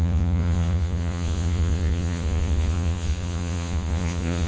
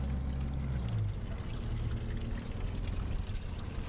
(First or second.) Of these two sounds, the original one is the second